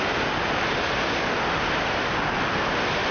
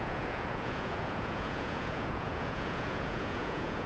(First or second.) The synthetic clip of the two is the second